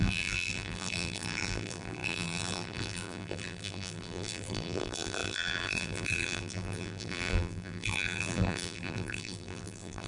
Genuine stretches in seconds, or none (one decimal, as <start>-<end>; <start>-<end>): none